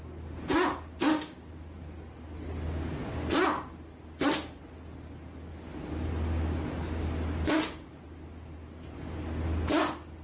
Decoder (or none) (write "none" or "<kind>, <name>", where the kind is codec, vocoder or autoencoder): none